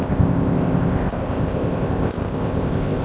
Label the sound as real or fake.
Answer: fake